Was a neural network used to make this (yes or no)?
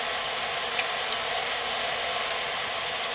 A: no